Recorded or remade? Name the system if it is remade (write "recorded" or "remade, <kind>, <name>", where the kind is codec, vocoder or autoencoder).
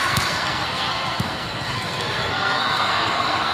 remade, codec, SNAC